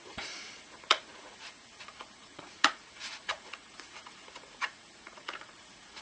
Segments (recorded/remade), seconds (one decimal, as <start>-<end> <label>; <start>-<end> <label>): 0.0-6.0 remade